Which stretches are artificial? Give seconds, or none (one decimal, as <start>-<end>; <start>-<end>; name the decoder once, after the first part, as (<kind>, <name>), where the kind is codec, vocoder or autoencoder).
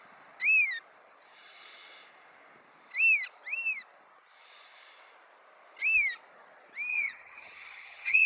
6.9-8.3 (vocoder, HiFi-GAN)